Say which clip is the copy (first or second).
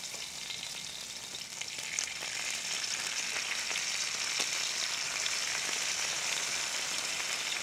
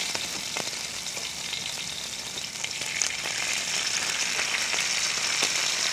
second